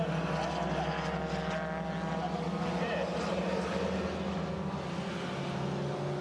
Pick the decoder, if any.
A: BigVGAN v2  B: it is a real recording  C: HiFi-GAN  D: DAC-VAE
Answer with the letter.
B